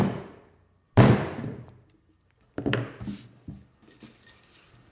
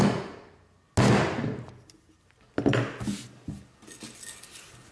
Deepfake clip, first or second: first